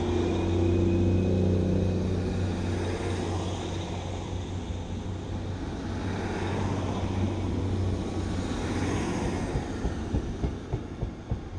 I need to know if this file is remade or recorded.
recorded